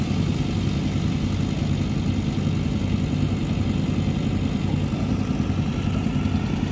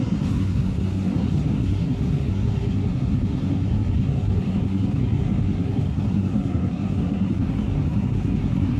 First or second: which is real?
first